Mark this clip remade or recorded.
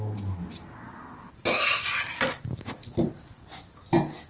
recorded